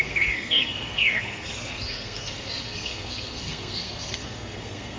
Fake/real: fake